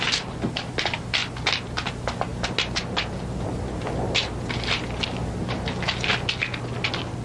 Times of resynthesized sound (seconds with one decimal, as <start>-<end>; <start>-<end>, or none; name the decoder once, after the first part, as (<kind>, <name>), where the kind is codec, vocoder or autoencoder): none